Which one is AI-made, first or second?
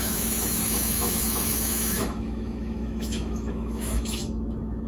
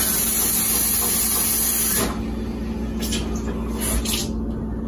first